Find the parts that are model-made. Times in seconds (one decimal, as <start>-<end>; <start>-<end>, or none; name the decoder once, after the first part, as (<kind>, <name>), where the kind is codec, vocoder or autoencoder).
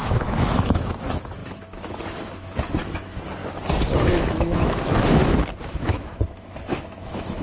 0.0-3.4 (autoencoder, DAC-VAE); 4.0-5.2; 5.8-7.4